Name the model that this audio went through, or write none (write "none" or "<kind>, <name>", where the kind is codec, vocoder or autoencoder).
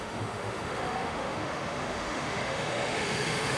autoencoder, DAC-VAE